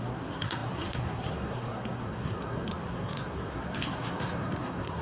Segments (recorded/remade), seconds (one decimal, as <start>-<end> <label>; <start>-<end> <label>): 0.0-5.0 remade